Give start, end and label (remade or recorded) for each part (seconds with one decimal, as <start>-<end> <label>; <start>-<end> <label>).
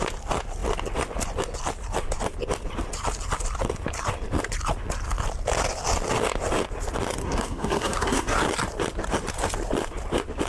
0.0-7.2 recorded; 7.2-8.4 remade; 8.4-10.5 recorded